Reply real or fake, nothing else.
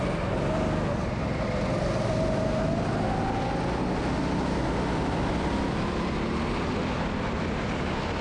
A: real